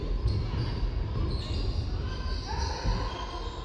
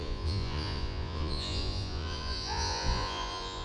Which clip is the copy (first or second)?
second